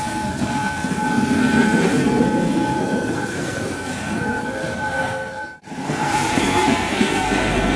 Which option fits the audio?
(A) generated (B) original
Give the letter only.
A